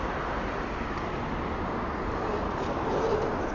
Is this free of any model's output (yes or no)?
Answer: yes